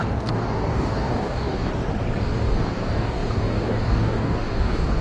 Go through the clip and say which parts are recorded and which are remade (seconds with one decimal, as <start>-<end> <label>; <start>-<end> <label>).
0.0-1.7 remade; 1.7-2.2 recorded; 2.2-5.0 remade